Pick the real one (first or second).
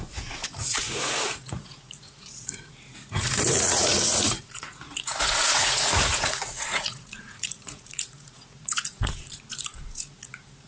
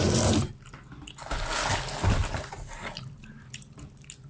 second